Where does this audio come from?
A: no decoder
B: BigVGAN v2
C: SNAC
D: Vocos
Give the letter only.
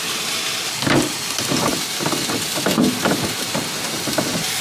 A